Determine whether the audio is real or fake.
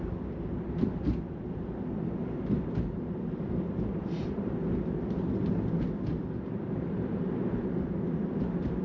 fake